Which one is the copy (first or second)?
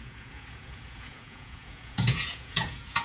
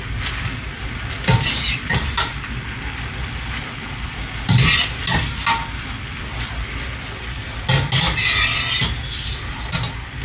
first